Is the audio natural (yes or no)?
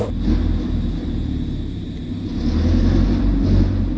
yes